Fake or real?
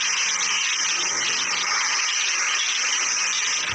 real